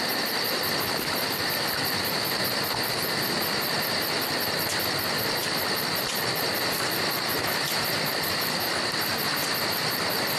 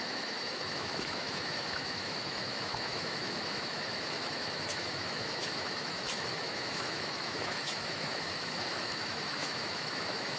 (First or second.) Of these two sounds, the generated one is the second